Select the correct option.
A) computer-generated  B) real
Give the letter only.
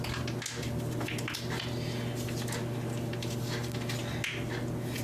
B